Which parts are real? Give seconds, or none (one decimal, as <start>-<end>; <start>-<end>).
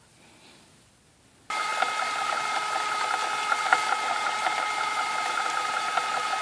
0.0-3.7; 5.9-6.4